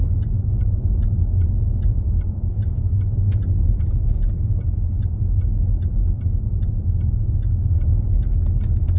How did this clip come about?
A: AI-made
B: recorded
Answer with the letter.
B